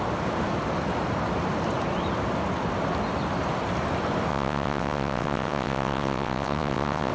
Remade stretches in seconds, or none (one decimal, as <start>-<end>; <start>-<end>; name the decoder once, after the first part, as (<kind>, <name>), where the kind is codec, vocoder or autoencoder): 4.3-7.1 (vocoder, WaveNeXt)